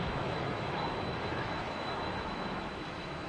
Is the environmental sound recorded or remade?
remade